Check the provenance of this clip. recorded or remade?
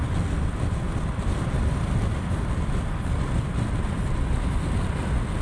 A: recorded